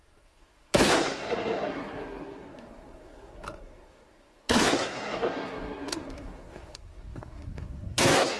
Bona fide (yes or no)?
no